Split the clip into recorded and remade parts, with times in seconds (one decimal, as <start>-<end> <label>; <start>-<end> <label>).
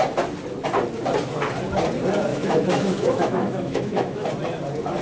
0.0-2.3 recorded; 2.3-4.3 remade; 4.3-5.0 recorded